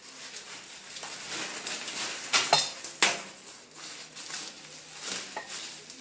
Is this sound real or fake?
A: real